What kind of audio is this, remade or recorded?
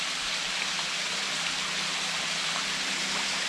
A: recorded